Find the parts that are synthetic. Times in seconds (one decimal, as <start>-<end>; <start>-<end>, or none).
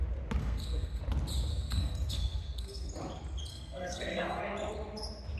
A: 0.4-1.0; 1.5-2.9; 3.5-4.4